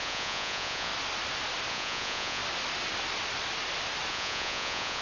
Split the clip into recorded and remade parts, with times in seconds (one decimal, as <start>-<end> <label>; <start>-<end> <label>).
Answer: 0.0-0.9 remade; 0.9-1.7 recorded; 1.7-2.4 remade; 2.4-4.1 recorded; 4.1-5.0 remade